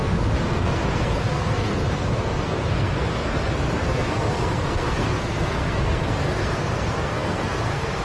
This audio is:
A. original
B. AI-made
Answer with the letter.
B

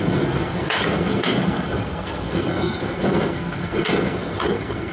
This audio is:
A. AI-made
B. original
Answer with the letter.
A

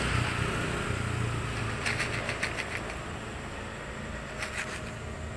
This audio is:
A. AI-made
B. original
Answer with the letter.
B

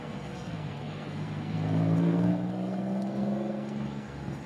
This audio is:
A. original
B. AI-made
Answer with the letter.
B